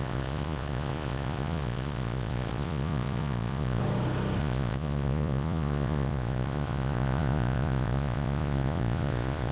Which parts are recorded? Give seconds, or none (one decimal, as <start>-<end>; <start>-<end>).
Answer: 3.8-4.4